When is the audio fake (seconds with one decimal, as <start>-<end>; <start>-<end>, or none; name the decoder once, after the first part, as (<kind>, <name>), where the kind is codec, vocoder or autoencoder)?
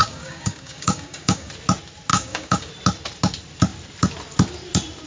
0.0-1.5 (codec, DAC); 2.1-2.7